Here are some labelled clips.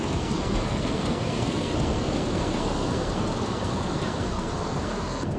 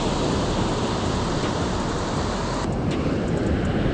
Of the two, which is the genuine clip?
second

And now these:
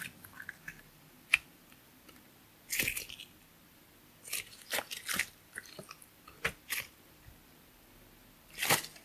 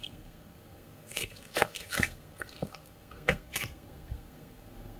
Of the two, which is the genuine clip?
first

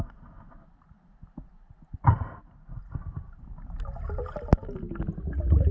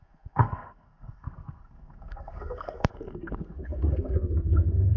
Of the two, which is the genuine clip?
first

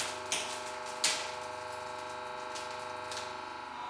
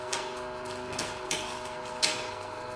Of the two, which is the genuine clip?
first